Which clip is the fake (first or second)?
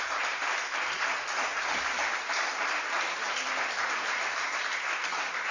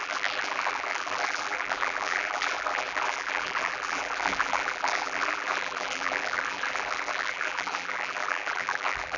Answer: second